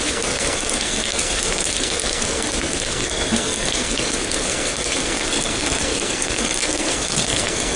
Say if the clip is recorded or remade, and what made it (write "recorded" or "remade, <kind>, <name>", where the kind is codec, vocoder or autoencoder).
remade, codec, SNAC